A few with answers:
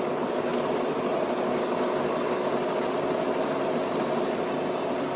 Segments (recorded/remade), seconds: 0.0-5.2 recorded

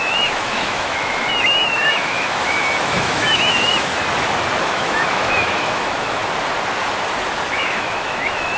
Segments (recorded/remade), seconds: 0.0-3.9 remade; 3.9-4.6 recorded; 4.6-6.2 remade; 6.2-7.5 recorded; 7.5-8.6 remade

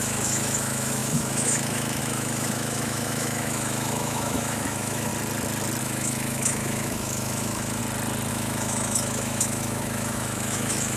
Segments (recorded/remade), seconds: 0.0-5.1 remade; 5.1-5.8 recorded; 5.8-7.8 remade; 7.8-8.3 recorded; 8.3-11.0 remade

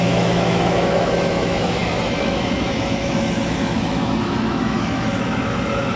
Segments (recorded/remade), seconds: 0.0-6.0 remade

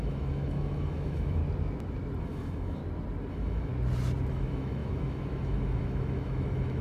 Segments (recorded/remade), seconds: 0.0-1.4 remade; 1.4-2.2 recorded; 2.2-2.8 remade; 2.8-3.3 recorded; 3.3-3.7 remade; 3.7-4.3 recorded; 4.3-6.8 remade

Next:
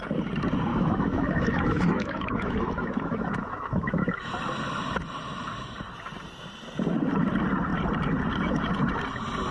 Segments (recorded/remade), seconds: 0.0-0.7 recorded; 0.7-4.3 remade; 4.3-9.5 recorded

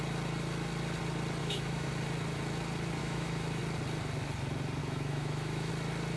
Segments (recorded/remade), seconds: 0.0-1.4 recorded; 1.4-1.9 remade; 1.9-3.0 recorded; 3.0-3.6 remade; 3.6-4.8 recorded; 4.8-5.7 remade; 5.7-6.2 recorded

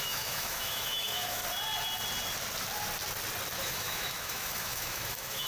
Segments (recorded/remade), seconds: 0.0-1.4 remade; 1.4-3.6 recorded; 3.6-5.5 remade